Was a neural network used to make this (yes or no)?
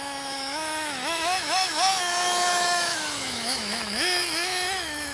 yes